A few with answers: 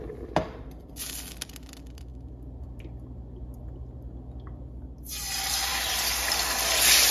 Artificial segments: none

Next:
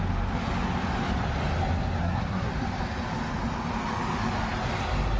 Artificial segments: 2.0-2.5

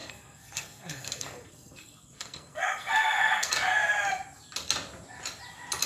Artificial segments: 0.0-3.5

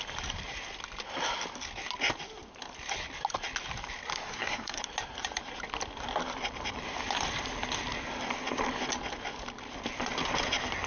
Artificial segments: 4.1-4.8

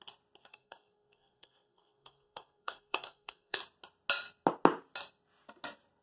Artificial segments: 0.5-3.6

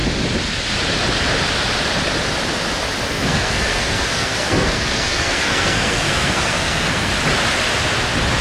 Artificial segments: 3.1-7.1

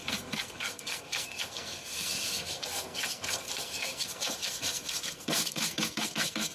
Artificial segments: 0.0-6.5